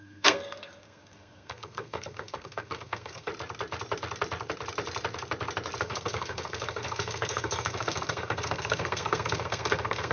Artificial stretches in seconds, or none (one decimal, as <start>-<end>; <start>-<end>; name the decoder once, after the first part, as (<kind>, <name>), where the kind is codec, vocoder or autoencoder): 0.0-3.3 (codec, SNAC); 5.8-10.1